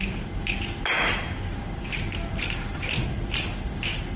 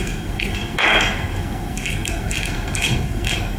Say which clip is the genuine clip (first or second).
first